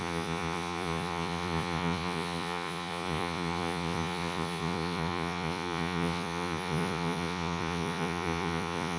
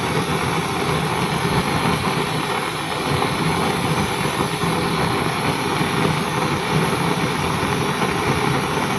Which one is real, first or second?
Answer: second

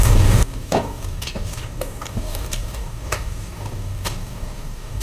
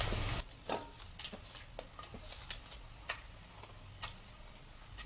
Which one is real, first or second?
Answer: second